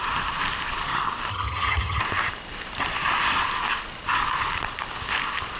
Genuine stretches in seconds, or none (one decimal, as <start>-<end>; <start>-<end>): 0.0-1.3; 2.0-5.6